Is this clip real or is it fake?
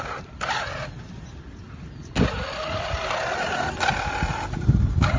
real